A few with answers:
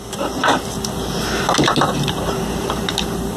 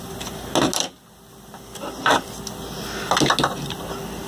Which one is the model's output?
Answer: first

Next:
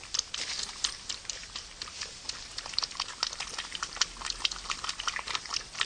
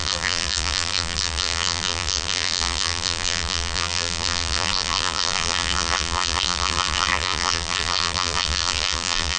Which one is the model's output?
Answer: second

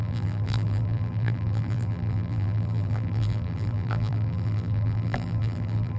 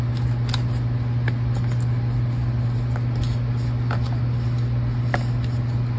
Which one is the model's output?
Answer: first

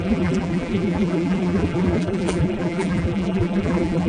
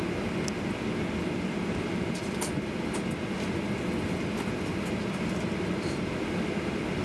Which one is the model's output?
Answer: first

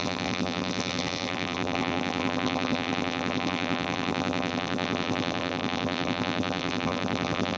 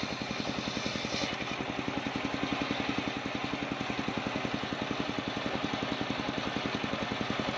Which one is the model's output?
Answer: first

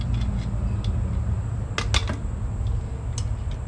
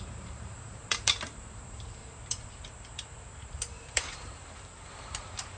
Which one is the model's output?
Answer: second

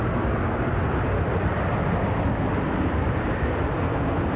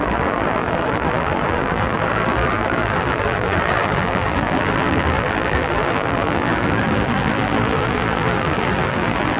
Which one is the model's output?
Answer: second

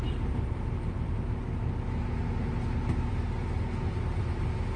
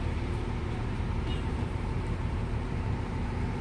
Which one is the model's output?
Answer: second